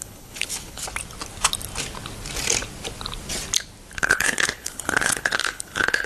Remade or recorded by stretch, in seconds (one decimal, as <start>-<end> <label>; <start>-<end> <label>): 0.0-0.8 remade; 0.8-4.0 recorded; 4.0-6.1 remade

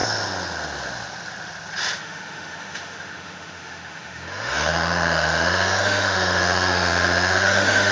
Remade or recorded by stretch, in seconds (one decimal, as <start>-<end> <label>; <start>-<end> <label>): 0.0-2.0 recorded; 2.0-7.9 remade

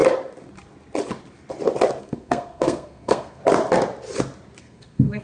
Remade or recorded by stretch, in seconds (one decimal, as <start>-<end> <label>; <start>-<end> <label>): 0.0-2.0 recorded; 2.0-3.4 remade; 3.4-4.6 recorded; 4.6-5.2 remade

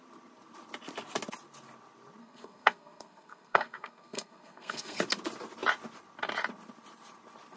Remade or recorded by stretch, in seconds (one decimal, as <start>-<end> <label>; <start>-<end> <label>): 0.0-2.2 recorded; 2.2-5.0 remade; 5.0-7.6 recorded

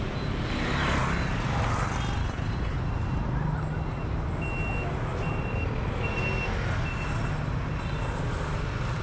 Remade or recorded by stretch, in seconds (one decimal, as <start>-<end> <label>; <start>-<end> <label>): 0.0-2.2 recorded; 2.2-2.8 remade; 2.8-9.0 recorded